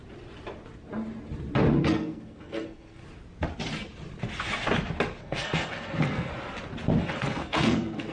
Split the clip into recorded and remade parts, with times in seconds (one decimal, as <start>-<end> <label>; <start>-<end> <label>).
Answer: 0.0-1.8 recorded; 1.8-3.0 remade; 3.0-5.2 recorded; 5.2-6.3 remade; 6.3-7.0 recorded; 7.0-8.1 remade